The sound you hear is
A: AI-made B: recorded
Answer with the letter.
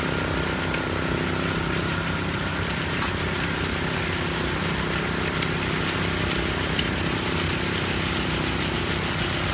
B